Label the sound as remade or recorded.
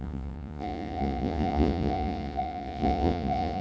remade